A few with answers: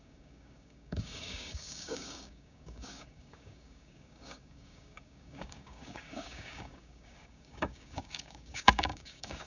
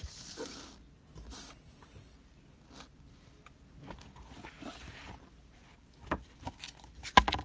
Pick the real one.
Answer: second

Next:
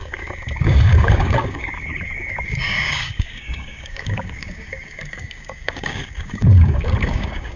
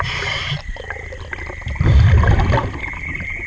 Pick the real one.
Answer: second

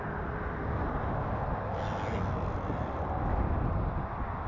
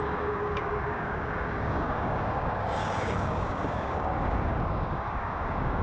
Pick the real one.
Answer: first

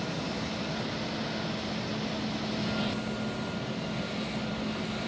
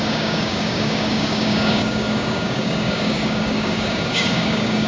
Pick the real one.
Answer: first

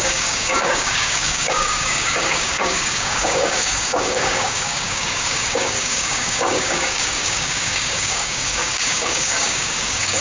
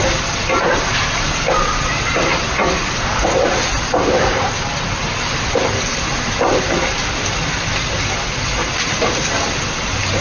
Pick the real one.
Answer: second